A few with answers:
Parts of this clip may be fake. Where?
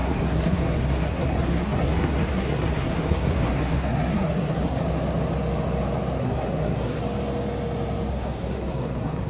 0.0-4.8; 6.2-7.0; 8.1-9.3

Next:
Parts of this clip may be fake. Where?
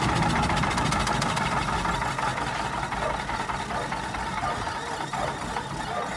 none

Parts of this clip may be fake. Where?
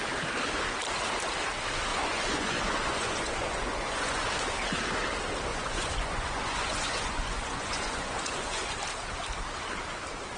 1.9-4.2; 5.5-8.7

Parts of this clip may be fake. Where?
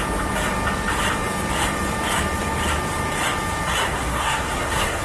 3.8-5.0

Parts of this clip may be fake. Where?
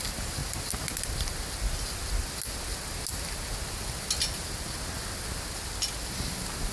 none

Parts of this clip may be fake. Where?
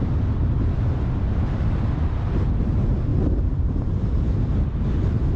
3.1-5.4